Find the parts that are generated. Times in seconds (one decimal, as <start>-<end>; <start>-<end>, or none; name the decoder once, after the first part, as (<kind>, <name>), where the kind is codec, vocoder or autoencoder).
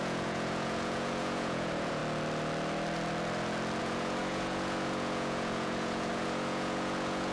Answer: 0.0-2.0 (vocoder, Vocos); 3.8-7.3